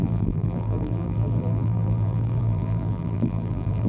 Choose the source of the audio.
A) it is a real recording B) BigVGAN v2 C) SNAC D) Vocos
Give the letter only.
B